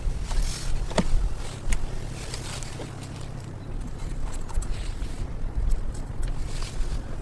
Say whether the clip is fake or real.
real